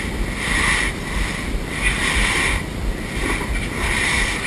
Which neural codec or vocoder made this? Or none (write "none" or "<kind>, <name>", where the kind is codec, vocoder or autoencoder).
none